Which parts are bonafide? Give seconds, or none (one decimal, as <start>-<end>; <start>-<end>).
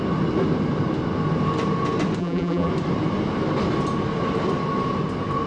0.0-2.2; 2.7-5.5